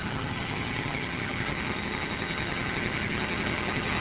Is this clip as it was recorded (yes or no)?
no